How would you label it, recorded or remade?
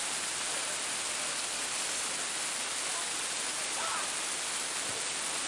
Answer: recorded